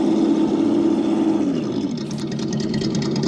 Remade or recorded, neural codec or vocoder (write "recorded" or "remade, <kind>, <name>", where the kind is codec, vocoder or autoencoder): recorded